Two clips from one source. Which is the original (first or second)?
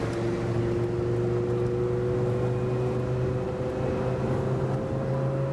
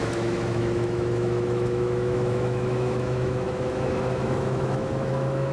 first